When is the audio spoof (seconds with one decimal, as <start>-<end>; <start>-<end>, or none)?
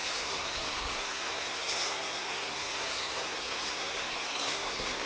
0.0-5.1